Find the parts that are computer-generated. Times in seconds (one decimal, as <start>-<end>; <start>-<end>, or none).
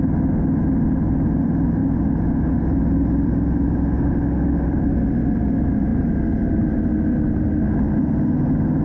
none